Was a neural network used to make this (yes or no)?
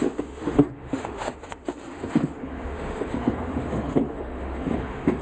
yes